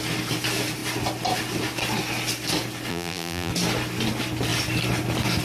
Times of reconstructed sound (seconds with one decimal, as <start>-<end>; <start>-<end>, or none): 2.9-3.5